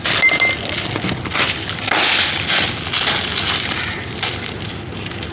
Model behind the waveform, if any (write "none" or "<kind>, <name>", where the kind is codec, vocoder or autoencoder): none